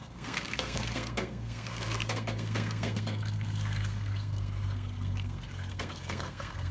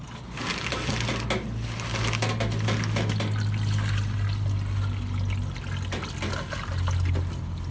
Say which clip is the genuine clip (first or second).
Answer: second